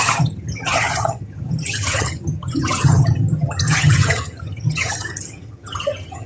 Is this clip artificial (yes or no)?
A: yes